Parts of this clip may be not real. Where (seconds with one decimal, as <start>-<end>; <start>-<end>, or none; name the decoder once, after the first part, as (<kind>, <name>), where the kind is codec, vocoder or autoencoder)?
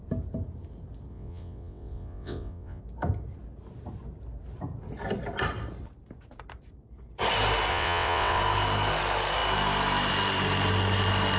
1.1-2.8 (vocoder, WaveNeXt); 7.7-8.4